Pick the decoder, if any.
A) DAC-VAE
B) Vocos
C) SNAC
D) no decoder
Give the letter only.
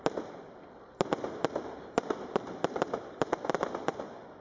D